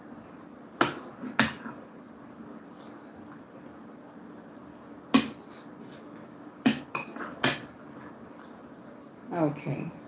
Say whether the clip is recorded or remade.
recorded